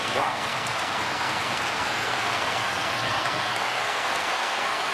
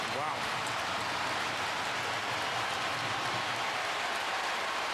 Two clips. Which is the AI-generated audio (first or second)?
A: first